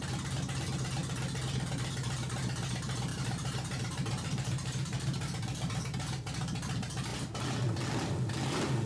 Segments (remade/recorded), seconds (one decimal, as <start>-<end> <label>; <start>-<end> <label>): 0.0-3.1 recorded; 3.1-5.8 remade; 5.8-8.9 recorded